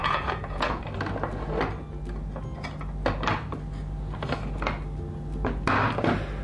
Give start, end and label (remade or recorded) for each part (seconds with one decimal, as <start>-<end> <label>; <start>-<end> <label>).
0.0-0.8 remade; 0.8-6.4 recorded